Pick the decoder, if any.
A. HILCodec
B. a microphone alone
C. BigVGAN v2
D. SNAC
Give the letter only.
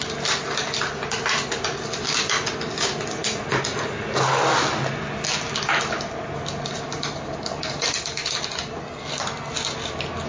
B